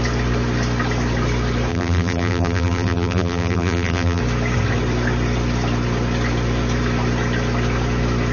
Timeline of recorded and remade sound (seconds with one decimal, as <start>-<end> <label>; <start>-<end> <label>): 0.0-1.7 recorded; 1.7-4.2 remade; 4.2-8.3 recorded